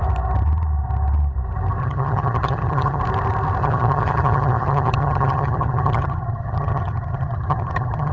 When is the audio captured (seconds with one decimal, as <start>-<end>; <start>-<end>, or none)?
0.0-1.8; 3.0-3.6